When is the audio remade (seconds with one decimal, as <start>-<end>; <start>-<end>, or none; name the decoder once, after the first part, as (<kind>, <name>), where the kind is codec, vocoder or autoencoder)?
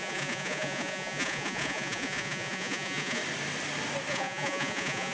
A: 0.0-3.2 (vocoder, Vocos); 4.1-5.1